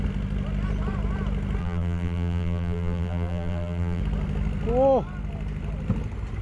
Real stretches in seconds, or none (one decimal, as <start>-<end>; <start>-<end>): 0.0-1.6; 4.0-6.4